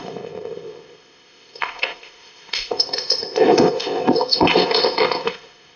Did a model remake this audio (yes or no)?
yes